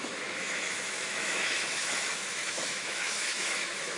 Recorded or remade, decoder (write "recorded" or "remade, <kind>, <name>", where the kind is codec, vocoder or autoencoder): remade, autoencoder, DAC-VAE